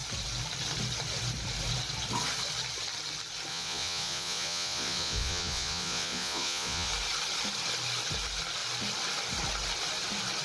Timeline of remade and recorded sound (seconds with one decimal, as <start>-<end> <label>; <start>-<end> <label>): 0.0-3.5 recorded; 3.5-6.9 remade; 6.9-10.4 recorded